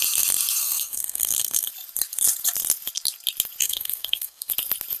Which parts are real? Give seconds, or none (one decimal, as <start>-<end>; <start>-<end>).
0.0-0.6; 1.7-3.6; 4.5-5.0